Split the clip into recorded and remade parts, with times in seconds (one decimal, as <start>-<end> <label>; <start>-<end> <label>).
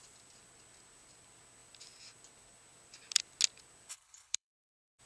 0.0-3.9 recorded; 3.9-5.0 remade